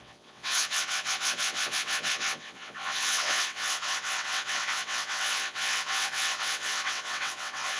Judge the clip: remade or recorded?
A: remade